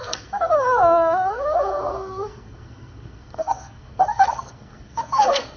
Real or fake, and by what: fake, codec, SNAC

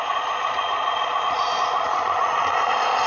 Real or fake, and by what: fake, vocoder, Vocos